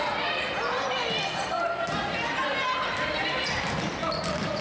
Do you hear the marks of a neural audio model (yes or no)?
no